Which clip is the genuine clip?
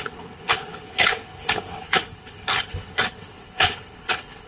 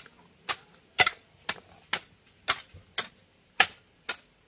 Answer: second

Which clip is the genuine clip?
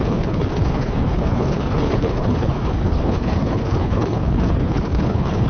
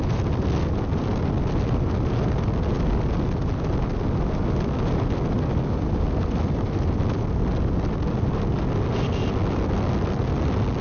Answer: second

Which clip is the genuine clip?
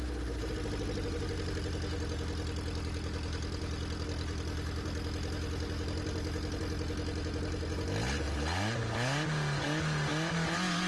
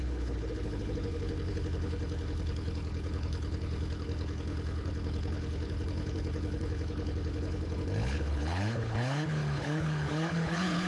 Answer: first